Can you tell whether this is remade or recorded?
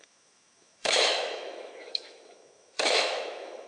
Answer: remade